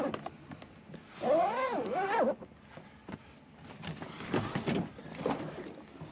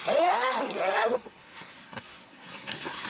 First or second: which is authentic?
first